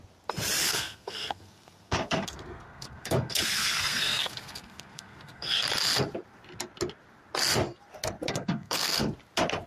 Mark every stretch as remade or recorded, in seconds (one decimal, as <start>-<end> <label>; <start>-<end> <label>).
0.0-0.6 recorded; 0.6-5.6 remade; 5.6-8.3 recorded; 8.3-9.1 remade; 9.1-9.7 recorded